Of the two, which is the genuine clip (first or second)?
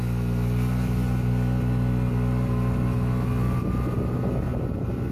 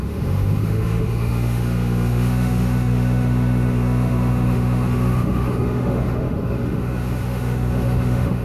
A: first